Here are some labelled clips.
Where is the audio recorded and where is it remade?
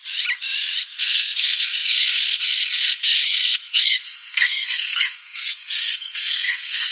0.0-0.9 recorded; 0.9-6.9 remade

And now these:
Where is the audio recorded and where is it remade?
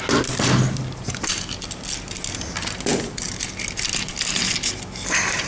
0.0-5.5 recorded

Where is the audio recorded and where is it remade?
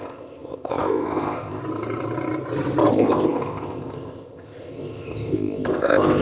0.0-1.6 remade; 1.6-2.9 recorded; 2.9-6.2 remade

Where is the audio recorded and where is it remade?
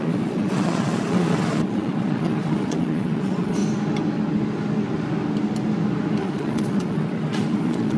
0.0-3.6 remade; 3.6-6.2 recorded; 6.2-8.0 remade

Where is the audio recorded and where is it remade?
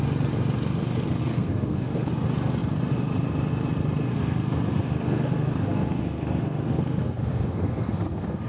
0.0-1.2 recorded; 1.2-2.1 remade; 2.1-4.1 recorded; 4.1-8.5 remade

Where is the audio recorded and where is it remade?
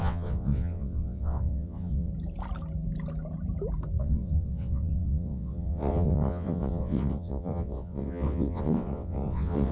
0.0-2.1 remade; 2.1-4.0 recorded; 4.0-9.7 remade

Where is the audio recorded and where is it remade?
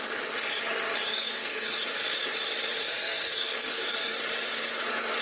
0.0-1.1 recorded; 1.1-1.8 remade; 1.8-3.1 recorded; 3.1-4.2 remade; 4.2-5.2 recorded